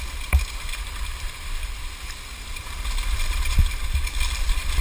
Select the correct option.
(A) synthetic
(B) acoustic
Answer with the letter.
A